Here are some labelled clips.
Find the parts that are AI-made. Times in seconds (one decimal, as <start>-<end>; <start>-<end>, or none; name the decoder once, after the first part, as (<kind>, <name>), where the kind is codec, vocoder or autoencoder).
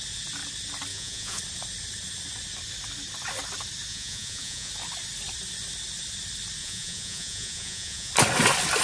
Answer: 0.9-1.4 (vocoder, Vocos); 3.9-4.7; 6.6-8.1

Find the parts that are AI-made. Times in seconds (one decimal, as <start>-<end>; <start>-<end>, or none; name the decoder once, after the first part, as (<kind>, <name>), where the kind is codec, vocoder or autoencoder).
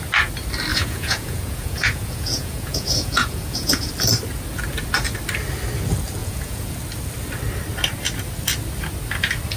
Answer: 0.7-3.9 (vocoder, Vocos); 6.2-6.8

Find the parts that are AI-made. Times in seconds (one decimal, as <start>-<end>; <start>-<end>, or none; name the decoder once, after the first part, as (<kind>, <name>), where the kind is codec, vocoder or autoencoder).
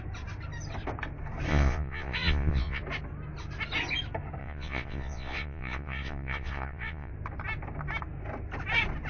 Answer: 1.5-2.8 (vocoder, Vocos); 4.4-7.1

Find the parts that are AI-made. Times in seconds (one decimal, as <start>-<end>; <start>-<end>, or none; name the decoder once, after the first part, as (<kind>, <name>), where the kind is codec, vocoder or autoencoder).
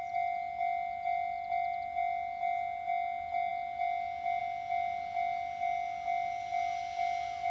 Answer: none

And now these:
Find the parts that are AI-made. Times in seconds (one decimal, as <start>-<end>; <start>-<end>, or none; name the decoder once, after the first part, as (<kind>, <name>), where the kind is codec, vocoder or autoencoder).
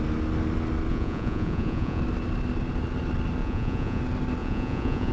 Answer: 0.9-2.0 (vocoder, Vocos); 3.4-4.0; 4.4-5.1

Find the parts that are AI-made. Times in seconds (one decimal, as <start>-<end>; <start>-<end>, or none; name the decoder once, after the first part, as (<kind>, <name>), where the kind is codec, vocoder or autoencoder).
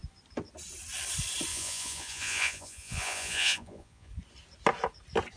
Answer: 1.5-4.1 (vocoder, Vocos)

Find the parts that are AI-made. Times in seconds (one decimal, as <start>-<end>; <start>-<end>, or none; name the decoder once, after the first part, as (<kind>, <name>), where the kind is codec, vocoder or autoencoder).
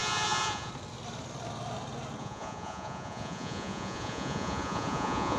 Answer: 0.0-0.7 (vocoder, Vocos); 2.2-5.4